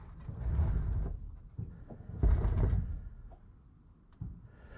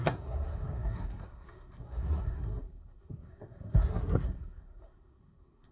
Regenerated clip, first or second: second